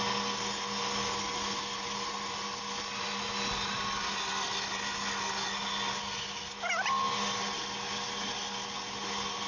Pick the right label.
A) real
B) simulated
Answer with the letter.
A